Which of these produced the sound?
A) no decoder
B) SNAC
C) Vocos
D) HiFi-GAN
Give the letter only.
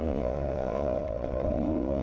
C